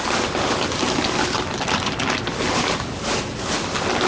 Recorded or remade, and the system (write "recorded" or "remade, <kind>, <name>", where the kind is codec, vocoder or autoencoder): recorded